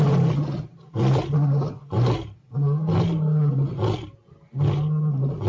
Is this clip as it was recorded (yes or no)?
yes